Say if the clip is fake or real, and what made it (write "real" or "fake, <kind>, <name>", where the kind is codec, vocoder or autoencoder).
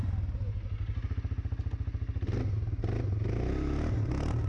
real